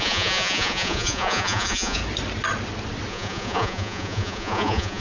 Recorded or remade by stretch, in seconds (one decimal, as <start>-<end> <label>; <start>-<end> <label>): 0.0-2.0 remade; 2.0-3.1 recorded; 3.1-5.0 remade